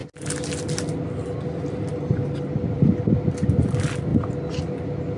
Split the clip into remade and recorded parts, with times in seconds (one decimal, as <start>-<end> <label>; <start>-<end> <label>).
0.0-5.2 recorded

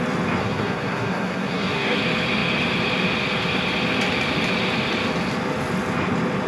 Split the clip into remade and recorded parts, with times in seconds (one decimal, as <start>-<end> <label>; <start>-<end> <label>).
0.0-0.4 recorded; 0.4-2.0 remade; 2.0-6.5 recorded

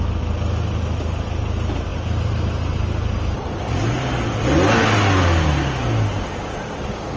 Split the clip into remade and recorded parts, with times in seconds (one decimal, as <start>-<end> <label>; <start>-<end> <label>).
0.0-7.2 recorded

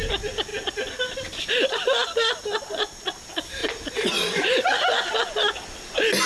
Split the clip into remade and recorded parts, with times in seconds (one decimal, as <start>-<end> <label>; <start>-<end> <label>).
0.0-6.3 recorded

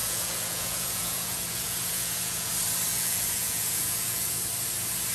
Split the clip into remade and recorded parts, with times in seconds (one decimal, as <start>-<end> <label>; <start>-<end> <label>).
0.0-2.5 remade; 2.5-2.9 recorded; 2.9-4.4 remade; 4.4-5.1 recorded

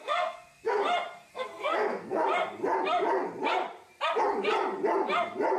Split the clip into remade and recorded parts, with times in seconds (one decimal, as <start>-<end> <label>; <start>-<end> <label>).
0.0-0.8 remade; 0.8-1.3 recorded; 1.3-2.2 remade; 2.2-5.6 recorded

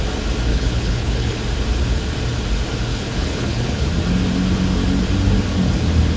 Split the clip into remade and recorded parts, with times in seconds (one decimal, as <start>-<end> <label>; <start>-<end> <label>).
0.0-0.5 recorded; 0.5-1.4 remade; 1.4-2.9 recorded; 2.9-3.9 remade; 3.9-6.2 recorded

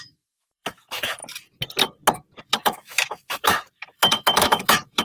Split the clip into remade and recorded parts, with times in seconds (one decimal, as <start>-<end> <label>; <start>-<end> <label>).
0.0-1.2 remade; 1.2-2.4 recorded; 2.4-5.0 remade